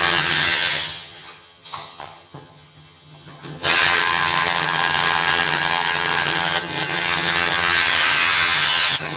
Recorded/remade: remade